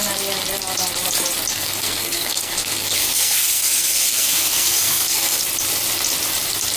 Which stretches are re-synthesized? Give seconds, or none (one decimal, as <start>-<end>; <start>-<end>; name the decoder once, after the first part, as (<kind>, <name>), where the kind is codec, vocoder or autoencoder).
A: 1.5-5.4 (codec, SNAC)